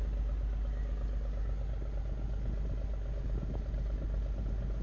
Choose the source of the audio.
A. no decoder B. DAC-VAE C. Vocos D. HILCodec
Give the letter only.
A